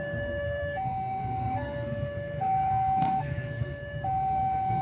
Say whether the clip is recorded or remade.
remade